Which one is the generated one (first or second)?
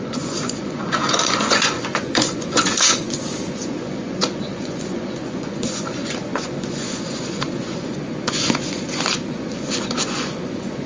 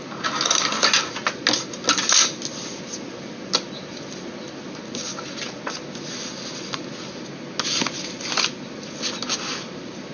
first